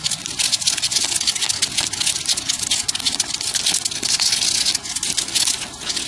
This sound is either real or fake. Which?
real